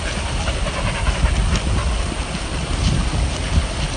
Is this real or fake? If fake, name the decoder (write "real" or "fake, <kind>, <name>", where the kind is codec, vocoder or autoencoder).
real